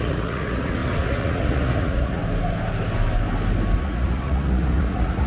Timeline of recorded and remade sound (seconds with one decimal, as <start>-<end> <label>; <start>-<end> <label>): 0.0-2.2 remade; 2.2-3.8 recorded; 3.8-5.3 remade